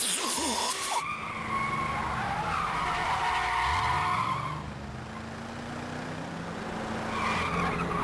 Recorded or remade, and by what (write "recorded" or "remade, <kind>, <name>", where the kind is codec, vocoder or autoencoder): recorded